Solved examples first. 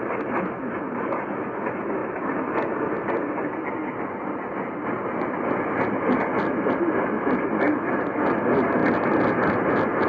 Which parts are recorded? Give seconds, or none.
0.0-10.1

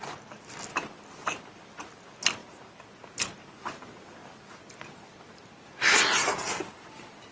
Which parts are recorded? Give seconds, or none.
0.0-7.3

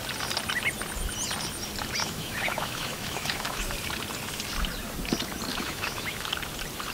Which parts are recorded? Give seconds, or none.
0.0-2.0; 3.6-5.5; 6.3-6.9

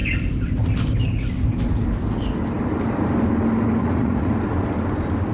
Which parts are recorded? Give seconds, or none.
0.0-3.8; 4.3-5.3

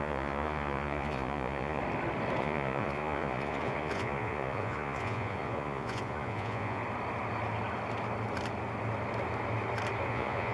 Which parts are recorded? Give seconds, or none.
1.8-2.4; 6.8-10.1

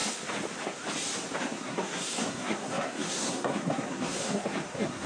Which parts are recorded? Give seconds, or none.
0.0-1.4

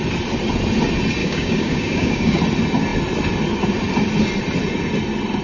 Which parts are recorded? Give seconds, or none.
0.0-1.2; 2.4-5.4

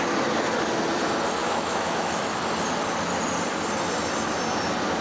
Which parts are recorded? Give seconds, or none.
0.0-1.4; 2.3-5.0